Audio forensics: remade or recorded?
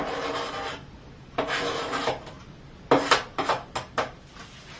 recorded